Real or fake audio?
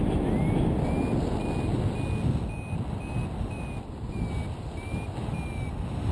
real